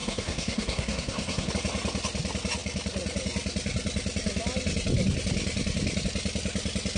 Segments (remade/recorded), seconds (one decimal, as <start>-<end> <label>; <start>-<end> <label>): 0.0-1.5 remade; 1.5-7.0 recorded